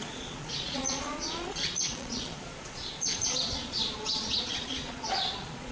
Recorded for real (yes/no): no